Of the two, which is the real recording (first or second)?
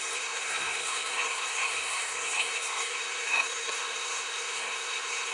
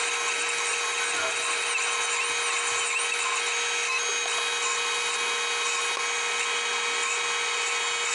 second